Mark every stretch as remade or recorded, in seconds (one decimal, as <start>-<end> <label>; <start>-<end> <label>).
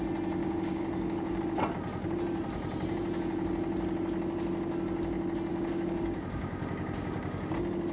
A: 0.0-0.4 recorded; 0.4-1.4 remade; 1.4-5.5 recorded; 5.5-7.5 remade; 7.5-7.9 recorded